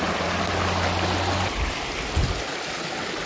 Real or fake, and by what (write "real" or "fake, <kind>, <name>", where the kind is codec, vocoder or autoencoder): real